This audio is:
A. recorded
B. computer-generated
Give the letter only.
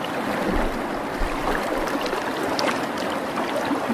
A